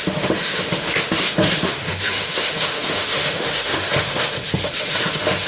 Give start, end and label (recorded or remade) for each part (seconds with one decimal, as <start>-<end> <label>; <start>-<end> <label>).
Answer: 0.0-5.5 remade